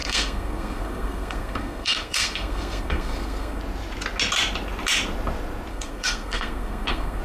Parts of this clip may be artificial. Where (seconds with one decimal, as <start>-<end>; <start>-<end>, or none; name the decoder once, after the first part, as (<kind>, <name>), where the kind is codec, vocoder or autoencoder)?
0.0-3.6 (codec, SNAC); 5.7-7.2